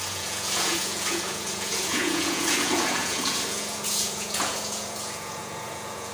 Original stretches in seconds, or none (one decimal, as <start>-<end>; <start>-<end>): none